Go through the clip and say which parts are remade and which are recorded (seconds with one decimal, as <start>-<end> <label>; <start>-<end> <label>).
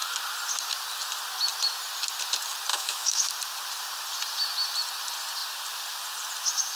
0.0-2.7 recorded; 2.7-3.3 remade; 3.3-6.8 recorded